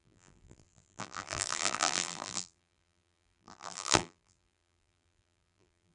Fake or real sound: fake